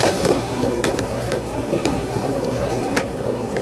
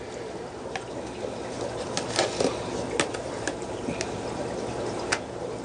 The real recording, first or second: second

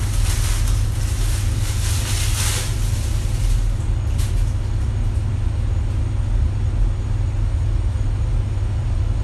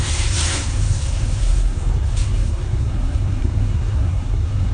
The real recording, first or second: first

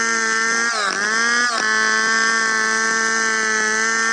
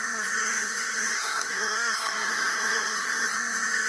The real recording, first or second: first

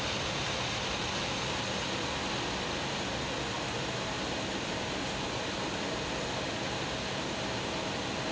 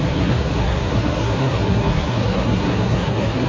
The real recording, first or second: first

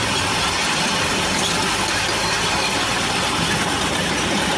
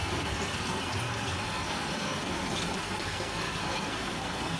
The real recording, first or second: first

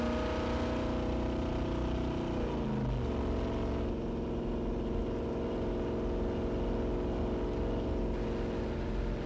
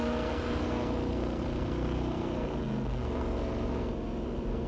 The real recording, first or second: first